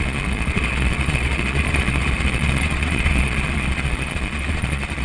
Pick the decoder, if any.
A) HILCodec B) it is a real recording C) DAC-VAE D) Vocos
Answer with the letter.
D